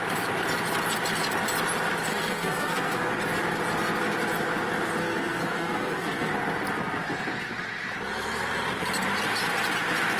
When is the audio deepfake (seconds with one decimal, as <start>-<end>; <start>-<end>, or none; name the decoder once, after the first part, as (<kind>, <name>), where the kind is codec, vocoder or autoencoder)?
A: 2.1-3.1 (codec, SNAC); 5.0-6.3